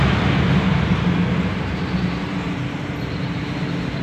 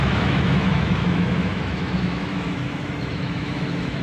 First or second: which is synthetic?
second